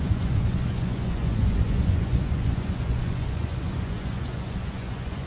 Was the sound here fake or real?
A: fake